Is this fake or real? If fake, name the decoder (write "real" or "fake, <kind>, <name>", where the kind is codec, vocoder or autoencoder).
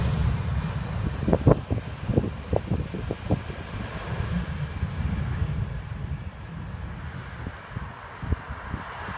real